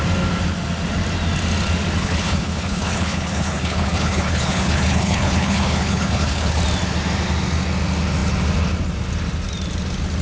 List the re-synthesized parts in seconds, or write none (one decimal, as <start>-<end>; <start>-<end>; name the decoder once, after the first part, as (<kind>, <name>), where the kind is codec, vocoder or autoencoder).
2.0-6.6 (codec, HILCodec)